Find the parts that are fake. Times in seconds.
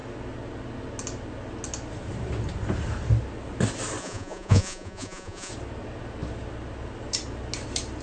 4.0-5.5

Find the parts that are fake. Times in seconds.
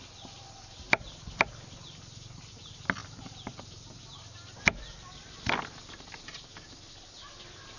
none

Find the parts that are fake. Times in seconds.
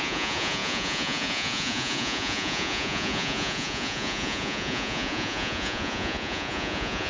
0.0-7.1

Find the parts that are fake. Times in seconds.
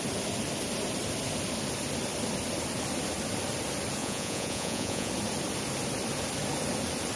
4.0-5.1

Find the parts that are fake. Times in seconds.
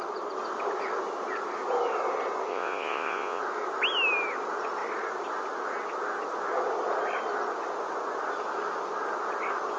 2.5-3.4